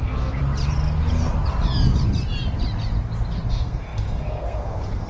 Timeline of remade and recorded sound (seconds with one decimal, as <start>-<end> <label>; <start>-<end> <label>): 0.0-0.4 remade; 0.4-3.5 recorded; 3.5-5.1 remade